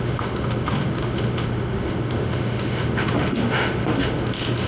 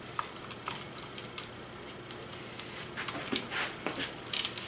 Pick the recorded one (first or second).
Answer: second